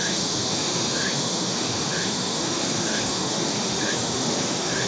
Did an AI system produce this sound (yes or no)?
yes